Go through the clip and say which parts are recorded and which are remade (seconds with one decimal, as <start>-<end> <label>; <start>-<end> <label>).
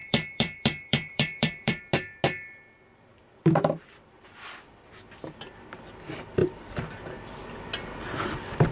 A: 0.0-1.8 remade; 1.8-3.1 recorded; 3.1-4.2 remade; 4.2-6.4 recorded; 6.4-7.2 remade; 7.2-8.7 recorded